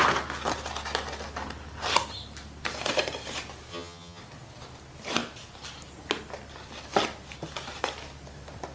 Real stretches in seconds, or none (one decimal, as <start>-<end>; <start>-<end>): 0.0-3.7; 4.2-8.7